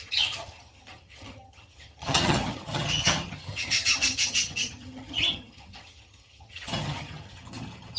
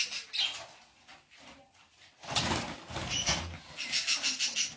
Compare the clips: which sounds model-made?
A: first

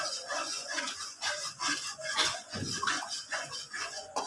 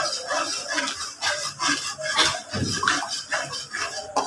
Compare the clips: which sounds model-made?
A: first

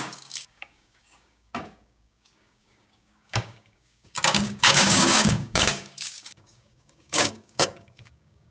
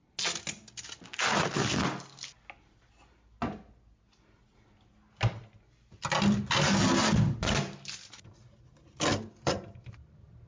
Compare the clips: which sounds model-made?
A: first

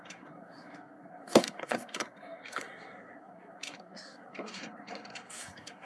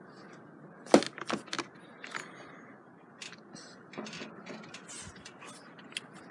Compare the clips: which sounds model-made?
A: first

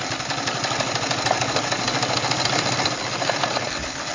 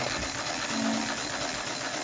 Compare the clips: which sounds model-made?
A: first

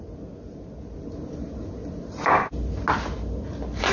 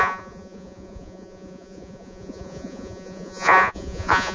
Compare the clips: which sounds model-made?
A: second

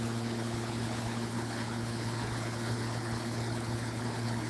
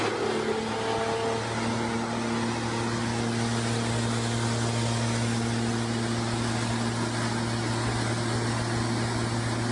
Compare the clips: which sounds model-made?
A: first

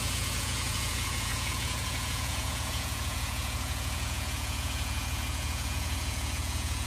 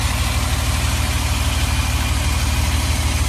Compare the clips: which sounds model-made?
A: first